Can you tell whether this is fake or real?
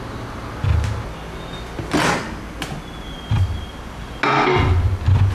real